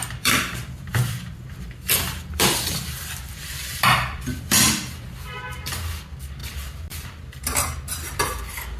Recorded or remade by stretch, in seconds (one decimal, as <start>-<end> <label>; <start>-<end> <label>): 0.0-8.8 remade